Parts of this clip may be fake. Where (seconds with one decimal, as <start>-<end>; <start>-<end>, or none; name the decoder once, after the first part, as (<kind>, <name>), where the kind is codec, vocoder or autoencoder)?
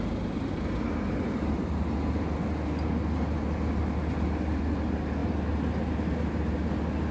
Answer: none